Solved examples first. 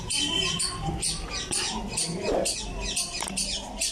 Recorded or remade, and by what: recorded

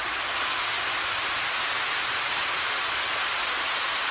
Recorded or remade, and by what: recorded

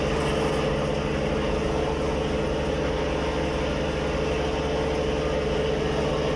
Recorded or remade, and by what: recorded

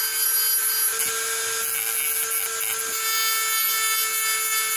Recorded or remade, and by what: recorded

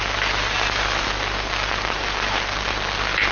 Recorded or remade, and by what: recorded